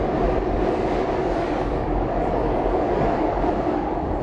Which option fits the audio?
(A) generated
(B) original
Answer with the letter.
A